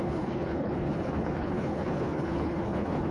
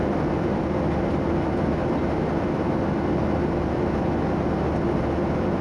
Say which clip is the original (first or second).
second